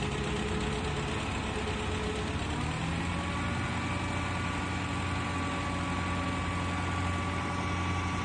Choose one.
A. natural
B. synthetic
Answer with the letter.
A